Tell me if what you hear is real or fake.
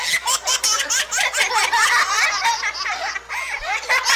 real